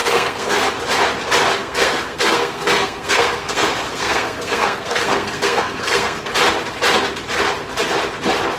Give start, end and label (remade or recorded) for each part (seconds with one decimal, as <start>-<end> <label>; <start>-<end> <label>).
0.0-0.7 remade; 0.7-1.6 recorded; 1.6-6.3 remade; 6.3-8.6 recorded